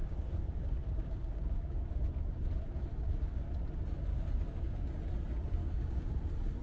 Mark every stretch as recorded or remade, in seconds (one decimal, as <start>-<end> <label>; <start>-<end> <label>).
0.0-1.9 remade; 1.9-2.9 recorded; 2.9-3.4 remade; 3.4-4.1 recorded; 4.1-5.0 remade; 5.0-5.6 recorded; 5.6-6.1 remade; 6.1-6.6 recorded